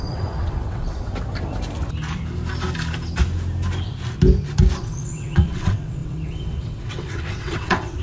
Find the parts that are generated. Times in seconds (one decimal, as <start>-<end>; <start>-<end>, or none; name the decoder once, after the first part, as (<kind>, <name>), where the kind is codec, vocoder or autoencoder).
0.0-1.1 (vocoder, WaveNeXt); 4.8-8.0